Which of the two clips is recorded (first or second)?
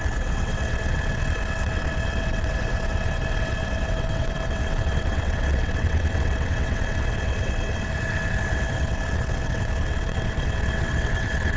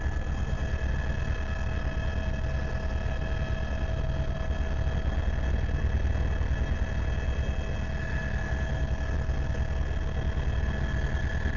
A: second